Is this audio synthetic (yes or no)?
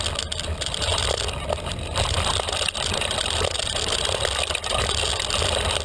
no